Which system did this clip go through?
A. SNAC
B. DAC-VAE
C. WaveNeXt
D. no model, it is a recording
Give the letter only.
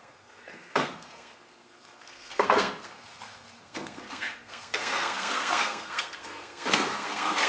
A